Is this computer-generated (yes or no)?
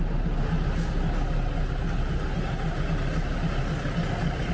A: no